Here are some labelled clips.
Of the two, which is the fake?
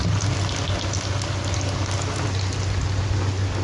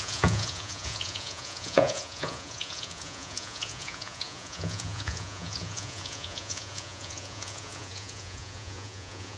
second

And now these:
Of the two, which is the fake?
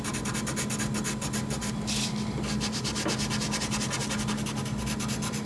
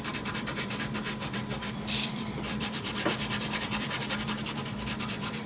second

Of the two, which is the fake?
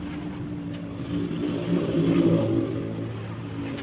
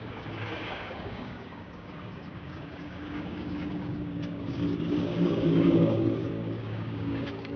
second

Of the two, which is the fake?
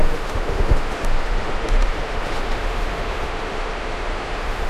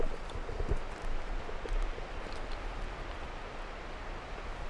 first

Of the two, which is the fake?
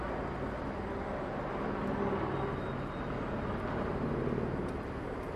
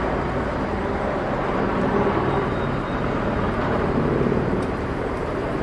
second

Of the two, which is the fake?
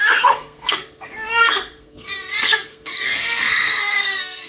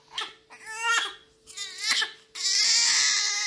first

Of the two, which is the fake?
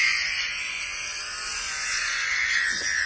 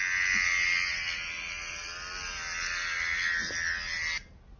first